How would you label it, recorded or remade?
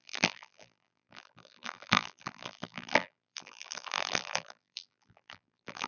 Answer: remade